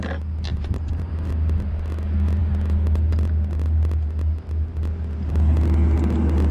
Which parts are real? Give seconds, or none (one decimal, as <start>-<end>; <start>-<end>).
0.0-0.5; 1.3-6.5